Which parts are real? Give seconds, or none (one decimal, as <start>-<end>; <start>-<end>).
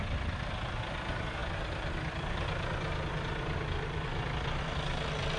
0.0-5.4